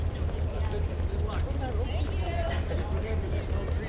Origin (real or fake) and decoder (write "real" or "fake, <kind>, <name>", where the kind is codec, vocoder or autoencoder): real